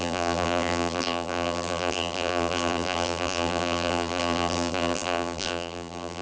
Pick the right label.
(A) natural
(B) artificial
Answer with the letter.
B